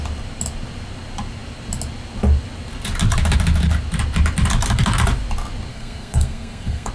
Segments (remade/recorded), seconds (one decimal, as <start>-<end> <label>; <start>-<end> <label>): 0.0-5.7 recorded; 5.7-6.9 remade